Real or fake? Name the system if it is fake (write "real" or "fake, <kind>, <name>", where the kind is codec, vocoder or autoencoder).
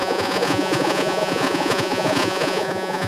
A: fake, vocoder, Vocos